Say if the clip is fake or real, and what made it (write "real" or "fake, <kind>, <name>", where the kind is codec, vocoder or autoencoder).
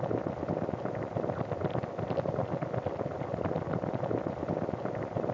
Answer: real